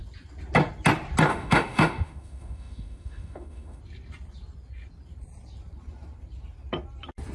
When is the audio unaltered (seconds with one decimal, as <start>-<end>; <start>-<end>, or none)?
0.0-1.3; 3.8-7.3